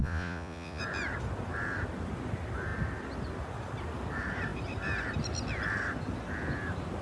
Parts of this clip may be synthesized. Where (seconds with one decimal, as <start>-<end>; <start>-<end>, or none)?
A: 0.0-0.8